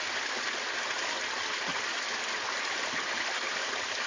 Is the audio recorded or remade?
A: recorded